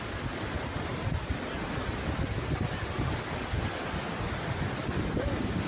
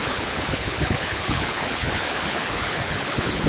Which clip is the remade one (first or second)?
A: second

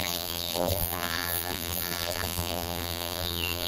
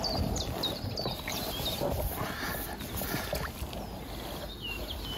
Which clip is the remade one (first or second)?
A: first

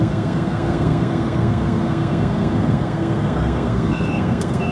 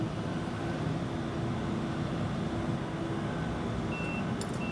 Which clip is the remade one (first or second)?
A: first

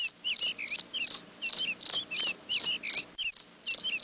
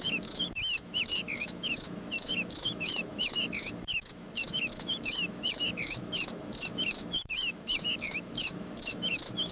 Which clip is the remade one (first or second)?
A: second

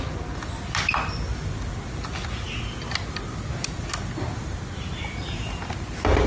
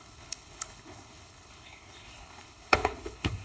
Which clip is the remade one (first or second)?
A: second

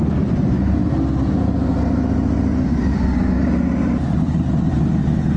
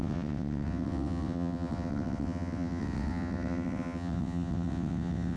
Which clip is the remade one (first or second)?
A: second